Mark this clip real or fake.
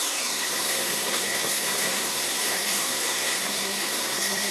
fake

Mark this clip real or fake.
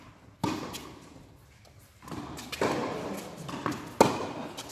real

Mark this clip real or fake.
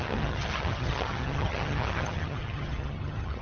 fake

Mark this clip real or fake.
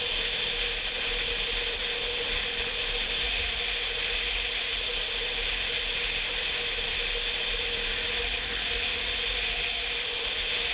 real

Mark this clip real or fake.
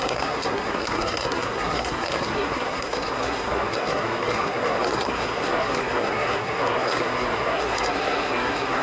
fake